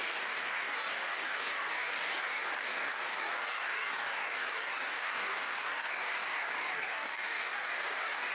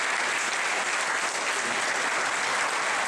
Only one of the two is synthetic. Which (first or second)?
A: first